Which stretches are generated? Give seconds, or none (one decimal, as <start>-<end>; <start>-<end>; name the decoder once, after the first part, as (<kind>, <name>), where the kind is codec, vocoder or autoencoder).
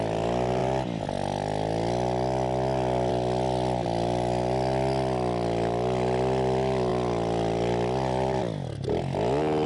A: none